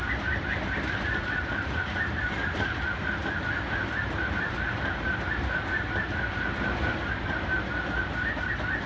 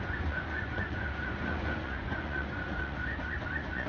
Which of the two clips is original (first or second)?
first